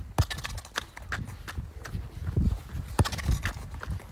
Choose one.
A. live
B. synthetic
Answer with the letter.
A